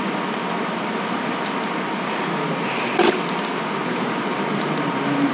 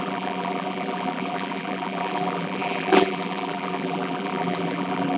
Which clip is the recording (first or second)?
first